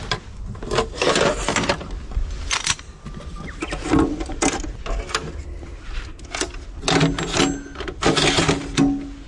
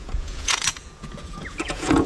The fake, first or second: second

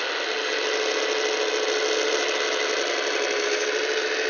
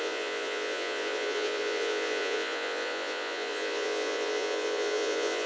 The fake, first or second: second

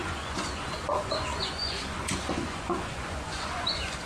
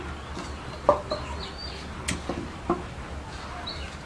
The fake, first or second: first